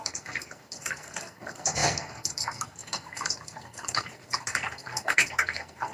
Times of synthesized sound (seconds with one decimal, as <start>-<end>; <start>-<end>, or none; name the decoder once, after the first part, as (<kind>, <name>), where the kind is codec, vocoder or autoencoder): 0.0-5.9 (codec, SNAC)